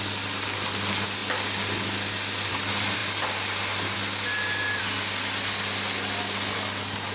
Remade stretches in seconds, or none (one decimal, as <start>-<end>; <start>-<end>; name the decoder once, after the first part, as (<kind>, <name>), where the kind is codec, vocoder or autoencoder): none